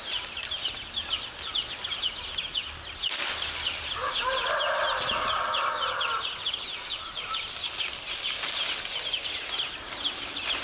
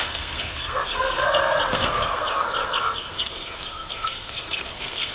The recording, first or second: first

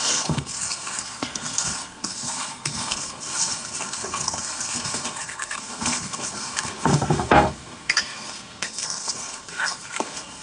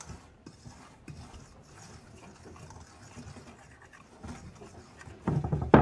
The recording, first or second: second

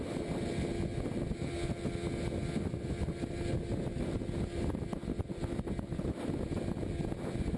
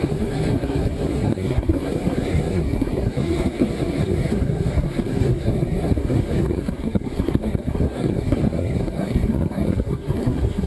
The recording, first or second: first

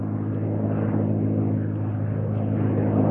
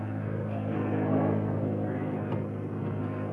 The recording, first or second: first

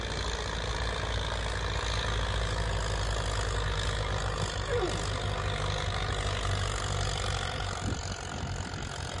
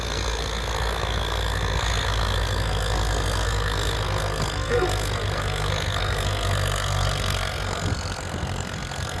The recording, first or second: first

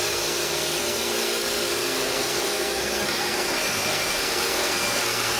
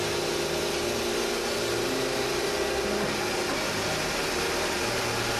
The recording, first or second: second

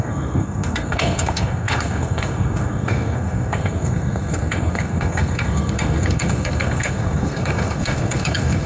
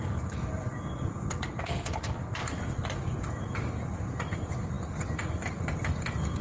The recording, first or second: second